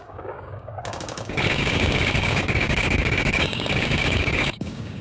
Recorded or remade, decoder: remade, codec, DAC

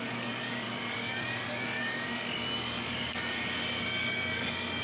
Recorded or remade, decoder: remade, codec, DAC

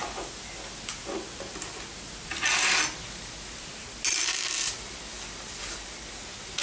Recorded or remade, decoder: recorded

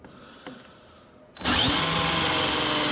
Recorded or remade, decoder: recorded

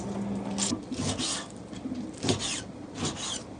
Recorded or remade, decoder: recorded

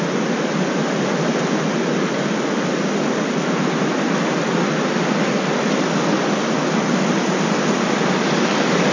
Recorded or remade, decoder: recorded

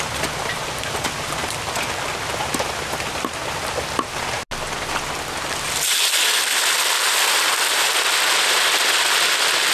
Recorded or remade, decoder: recorded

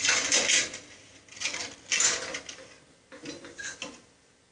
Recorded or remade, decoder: recorded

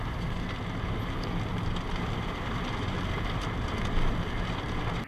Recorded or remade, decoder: recorded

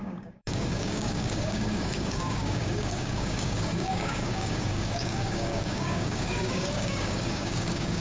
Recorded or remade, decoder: remade, codec, DAC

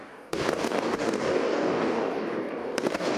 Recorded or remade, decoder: remade, codec, DAC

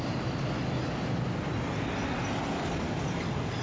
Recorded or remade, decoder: recorded